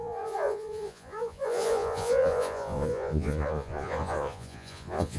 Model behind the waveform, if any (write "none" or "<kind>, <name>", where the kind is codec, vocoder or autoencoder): vocoder, Vocos